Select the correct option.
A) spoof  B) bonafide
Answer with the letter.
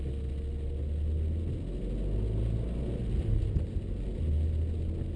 B